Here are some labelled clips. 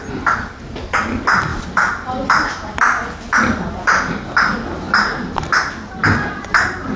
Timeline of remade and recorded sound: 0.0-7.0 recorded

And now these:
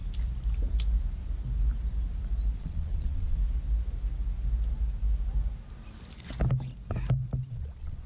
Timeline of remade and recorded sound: 0.0-2.6 recorded; 2.6-3.4 remade; 3.4-7.5 recorded; 7.5-8.1 remade

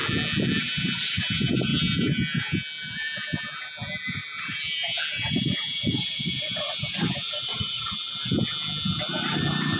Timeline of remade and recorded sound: 0.0-0.6 recorded; 0.6-1.7 remade; 1.7-5.2 recorded; 5.2-8.2 remade; 8.2-9.0 recorded; 9.0-9.8 remade

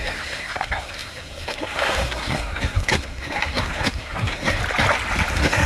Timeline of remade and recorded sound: 0.0-4.6 remade; 4.6-5.3 recorded; 5.3-5.7 remade